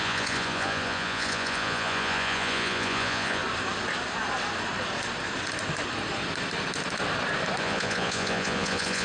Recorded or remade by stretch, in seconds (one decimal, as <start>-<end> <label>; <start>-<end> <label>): 0.0-3.4 remade; 3.4-7.6 recorded; 7.6-9.0 remade

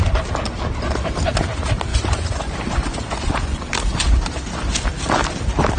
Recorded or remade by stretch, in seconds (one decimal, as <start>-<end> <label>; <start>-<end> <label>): 0.0-1.9 recorded; 1.9-3.6 remade; 3.6-5.8 recorded

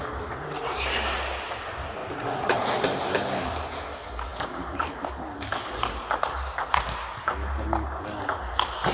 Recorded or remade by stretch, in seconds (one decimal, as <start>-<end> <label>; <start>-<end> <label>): 0.0-2.0 recorded; 2.0-2.8 remade; 2.8-8.9 recorded

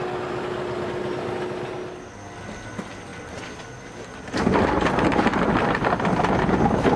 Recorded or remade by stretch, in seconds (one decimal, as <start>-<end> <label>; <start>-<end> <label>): 0.0-7.0 recorded

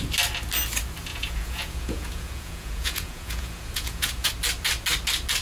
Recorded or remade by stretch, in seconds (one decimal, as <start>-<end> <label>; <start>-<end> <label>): 0.0-1.1 recorded; 1.1-4.3 remade; 4.3-5.4 recorded

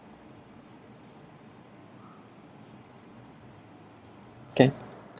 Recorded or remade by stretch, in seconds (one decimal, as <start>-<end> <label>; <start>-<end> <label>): 0.0-1.8 remade; 1.8-2.7 recorded; 2.7-3.6 remade; 3.6-4.2 recorded; 4.2-5.2 remade

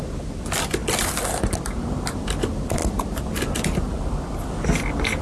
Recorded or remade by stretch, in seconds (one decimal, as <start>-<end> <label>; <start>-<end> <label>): 0.0-5.2 recorded